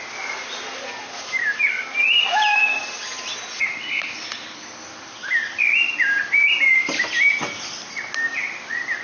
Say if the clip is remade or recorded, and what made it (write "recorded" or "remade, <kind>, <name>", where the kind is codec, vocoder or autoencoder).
recorded